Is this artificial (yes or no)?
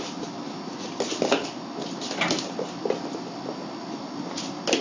no